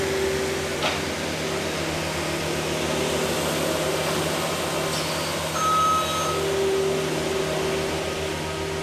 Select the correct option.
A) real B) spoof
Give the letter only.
A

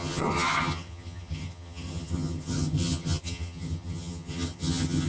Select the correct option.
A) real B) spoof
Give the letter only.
B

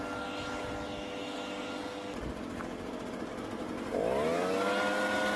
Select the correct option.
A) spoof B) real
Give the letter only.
B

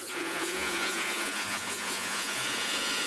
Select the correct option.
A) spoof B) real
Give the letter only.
A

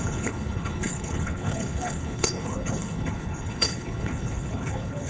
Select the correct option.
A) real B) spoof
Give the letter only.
B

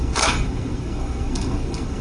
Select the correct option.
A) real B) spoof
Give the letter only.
B